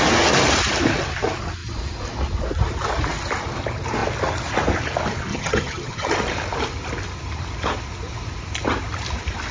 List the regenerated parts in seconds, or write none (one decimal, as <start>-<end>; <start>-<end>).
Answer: 5.3-6.1